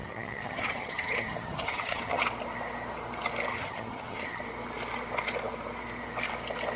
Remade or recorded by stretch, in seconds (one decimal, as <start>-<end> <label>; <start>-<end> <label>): 0.0-2.2 remade; 2.2-3.5 recorded; 3.5-4.4 remade; 4.4-6.8 recorded